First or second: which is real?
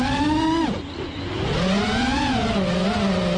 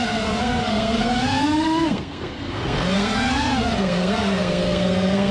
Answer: first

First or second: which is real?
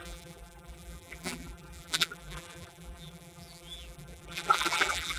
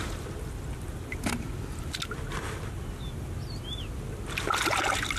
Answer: second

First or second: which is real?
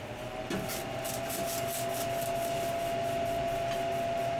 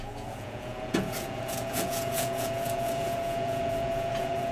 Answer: first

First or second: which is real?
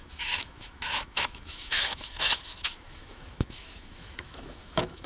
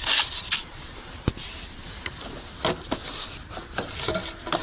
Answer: second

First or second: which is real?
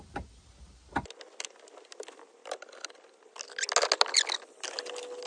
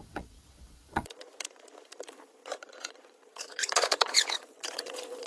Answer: first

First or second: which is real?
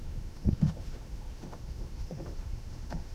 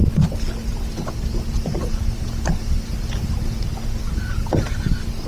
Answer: second